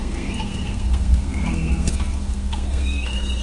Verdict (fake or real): fake